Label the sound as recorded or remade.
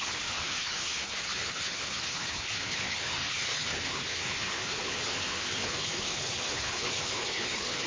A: remade